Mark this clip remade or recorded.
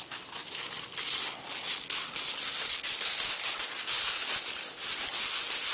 recorded